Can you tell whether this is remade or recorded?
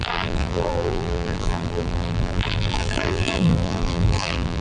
remade